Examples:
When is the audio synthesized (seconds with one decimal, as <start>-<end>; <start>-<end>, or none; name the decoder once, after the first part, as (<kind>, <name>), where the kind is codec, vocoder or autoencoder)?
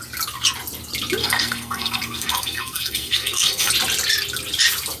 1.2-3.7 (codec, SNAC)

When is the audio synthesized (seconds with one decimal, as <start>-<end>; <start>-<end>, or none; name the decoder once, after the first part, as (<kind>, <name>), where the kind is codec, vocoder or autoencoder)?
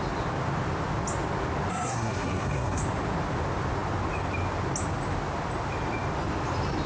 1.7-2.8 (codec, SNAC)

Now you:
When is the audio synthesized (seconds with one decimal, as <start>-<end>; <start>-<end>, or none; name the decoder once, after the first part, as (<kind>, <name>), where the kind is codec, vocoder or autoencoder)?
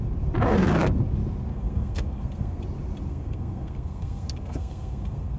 1.5-2.6 (codec, SNAC); 3.1-5.4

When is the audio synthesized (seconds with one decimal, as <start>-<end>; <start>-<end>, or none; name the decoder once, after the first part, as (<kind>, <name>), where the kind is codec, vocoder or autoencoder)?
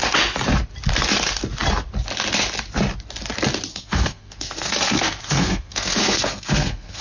3.7-7.0 (codec, SNAC)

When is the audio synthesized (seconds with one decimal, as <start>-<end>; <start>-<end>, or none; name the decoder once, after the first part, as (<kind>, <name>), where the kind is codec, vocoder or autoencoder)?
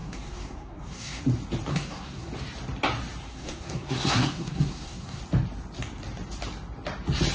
0.0-1.2 (codec, SNAC); 1.7-2.3; 3.3-5.2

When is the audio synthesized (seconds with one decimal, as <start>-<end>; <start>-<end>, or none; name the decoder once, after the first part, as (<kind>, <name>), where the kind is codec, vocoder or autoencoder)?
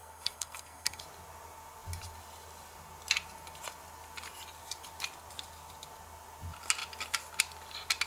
0.0-1.0 (codec, SNAC)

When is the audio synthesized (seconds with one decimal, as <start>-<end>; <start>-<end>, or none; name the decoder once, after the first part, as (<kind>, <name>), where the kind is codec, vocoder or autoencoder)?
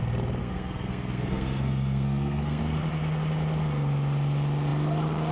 0.4-2.6 (codec, SNAC)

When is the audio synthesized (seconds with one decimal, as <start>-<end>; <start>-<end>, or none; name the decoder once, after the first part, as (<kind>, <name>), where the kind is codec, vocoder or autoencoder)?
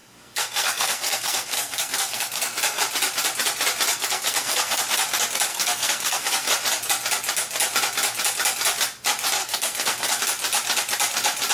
0.0-2.8 (codec, SNAC); 3.9-4.8; 5.5-6.5; 9.4-10.2